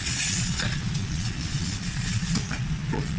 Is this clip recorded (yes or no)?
no